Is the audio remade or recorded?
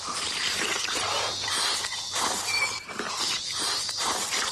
remade